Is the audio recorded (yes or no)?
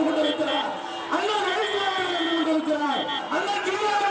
no